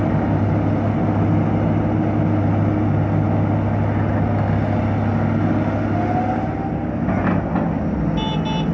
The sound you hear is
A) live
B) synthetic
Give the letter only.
A